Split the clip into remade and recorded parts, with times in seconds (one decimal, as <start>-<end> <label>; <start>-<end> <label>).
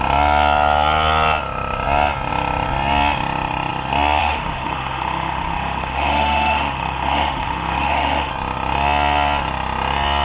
0.0-4.2 recorded; 4.2-8.3 remade; 8.3-10.2 recorded